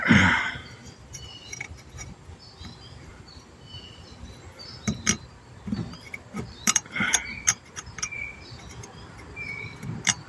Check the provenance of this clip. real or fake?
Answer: fake